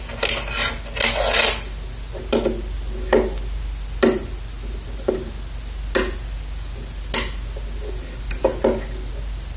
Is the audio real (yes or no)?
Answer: yes